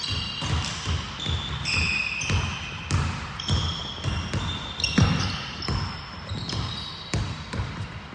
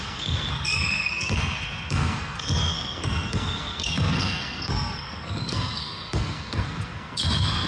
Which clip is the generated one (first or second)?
second